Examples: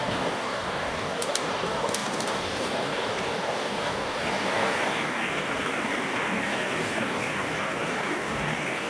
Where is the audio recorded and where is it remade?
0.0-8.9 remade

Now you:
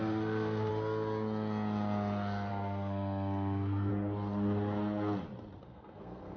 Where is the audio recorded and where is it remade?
0.0-0.7 remade; 0.7-2.5 recorded; 2.5-3.9 remade; 3.9-5.6 recorded; 5.6-6.4 remade